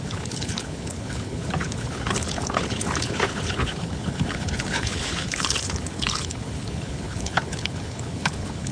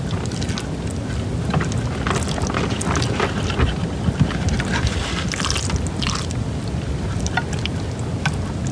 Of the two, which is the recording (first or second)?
second